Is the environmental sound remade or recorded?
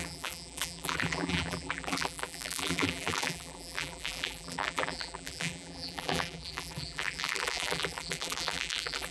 remade